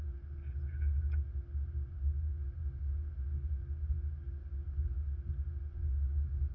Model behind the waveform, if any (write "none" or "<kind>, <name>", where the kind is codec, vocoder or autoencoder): none